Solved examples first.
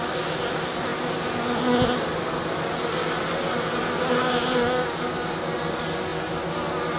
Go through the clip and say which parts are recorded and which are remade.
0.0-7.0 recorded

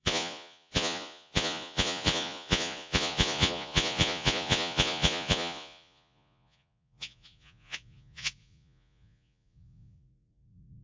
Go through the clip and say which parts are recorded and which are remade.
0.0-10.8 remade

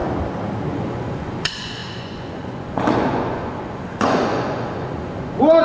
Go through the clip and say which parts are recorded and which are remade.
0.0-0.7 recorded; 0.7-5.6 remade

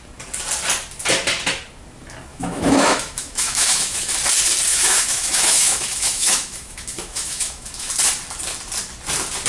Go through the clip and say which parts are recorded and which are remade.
0.0-2.3 recorded; 2.3-4.1 remade; 4.1-4.7 recorded; 4.7-7.9 remade; 7.9-9.5 recorded

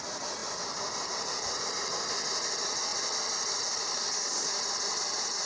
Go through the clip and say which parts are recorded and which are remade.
0.0-5.5 recorded

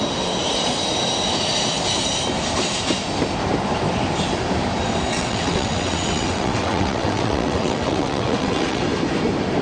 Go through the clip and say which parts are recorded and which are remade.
0.0-5.1 recorded; 5.1-8.8 remade; 8.8-9.6 recorded

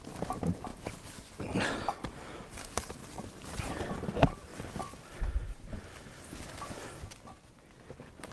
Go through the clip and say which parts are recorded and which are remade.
0.0-3.0 recorded; 3.0-3.7 remade; 3.7-8.3 recorded